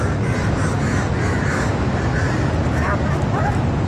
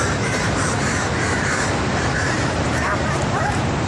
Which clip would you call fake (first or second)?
second